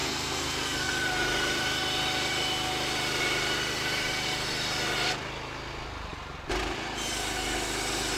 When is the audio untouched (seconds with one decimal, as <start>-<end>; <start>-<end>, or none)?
0.9-8.2